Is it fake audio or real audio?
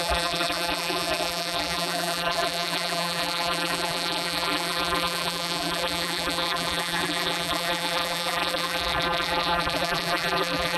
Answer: fake